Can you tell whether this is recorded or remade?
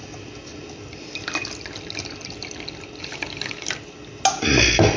recorded